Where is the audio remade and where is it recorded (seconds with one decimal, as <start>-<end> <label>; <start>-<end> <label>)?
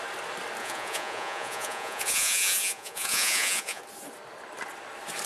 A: 0.0-0.6 recorded; 0.6-3.8 remade; 3.8-5.3 recorded